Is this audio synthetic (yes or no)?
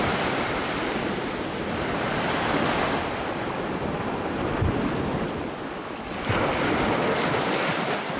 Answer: no